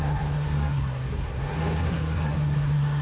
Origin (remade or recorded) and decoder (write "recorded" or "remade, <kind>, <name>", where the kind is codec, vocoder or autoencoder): remade, codec, SNAC